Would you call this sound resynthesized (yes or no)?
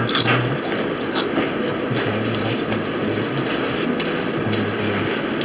no